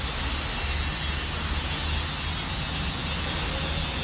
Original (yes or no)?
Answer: yes